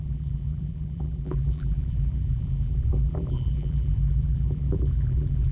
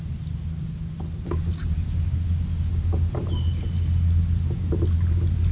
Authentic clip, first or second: second